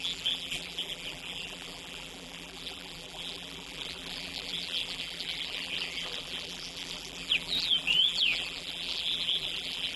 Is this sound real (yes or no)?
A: no